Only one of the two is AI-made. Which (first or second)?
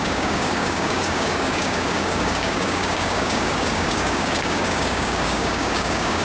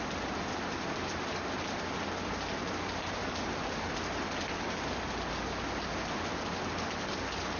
first